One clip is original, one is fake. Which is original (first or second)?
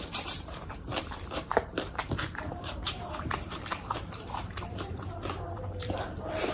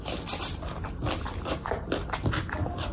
second